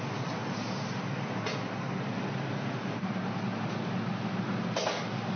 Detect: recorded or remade recorded